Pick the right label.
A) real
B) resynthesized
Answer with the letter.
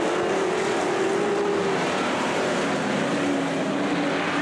A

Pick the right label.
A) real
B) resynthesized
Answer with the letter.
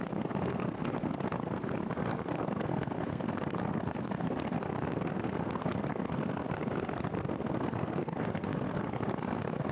B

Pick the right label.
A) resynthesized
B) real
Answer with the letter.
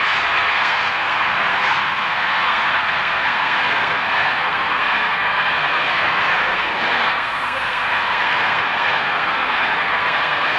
A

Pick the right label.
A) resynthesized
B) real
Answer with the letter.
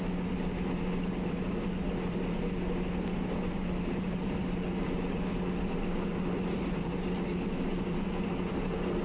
B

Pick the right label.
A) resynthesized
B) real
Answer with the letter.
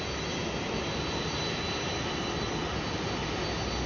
B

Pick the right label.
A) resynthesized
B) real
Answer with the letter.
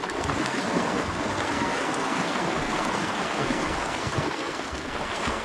A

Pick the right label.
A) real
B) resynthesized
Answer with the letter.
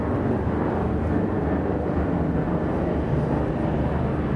A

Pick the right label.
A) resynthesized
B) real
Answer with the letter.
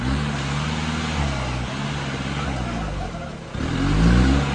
B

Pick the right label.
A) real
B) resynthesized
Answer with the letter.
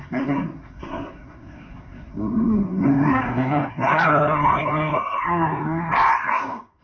B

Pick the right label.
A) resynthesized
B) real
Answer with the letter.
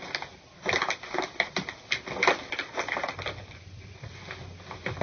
B